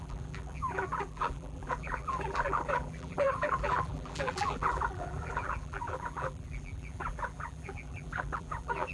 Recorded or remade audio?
remade